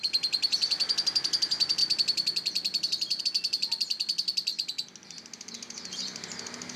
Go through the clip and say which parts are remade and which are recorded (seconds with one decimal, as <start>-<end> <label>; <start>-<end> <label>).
0.0-6.8 recorded